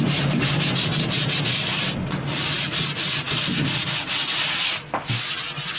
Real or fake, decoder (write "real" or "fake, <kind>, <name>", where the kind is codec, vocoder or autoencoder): real